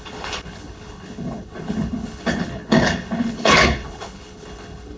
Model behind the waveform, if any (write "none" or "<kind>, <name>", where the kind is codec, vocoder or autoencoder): codec, HILCodec